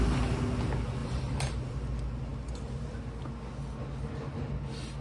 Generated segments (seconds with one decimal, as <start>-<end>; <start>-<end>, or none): 1.0-1.8